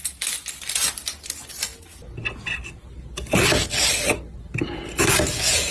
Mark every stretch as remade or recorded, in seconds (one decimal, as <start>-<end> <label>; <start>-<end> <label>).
0.0-5.7 recorded